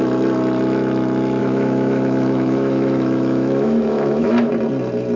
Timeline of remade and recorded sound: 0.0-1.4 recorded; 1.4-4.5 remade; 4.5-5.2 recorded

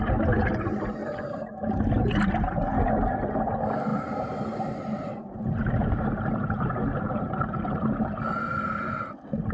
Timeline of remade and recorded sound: 0.0-1.0 recorded; 1.0-1.5 remade; 1.5-3.9 recorded; 3.9-8.9 remade; 8.9-9.5 recorded